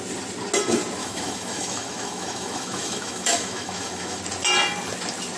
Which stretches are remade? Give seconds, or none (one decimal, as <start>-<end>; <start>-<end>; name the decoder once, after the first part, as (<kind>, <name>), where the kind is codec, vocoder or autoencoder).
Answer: 1.0-4.2 (autoencoder, DAC-VAE)